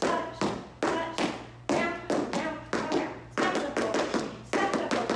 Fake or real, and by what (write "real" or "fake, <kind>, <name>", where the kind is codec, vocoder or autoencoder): real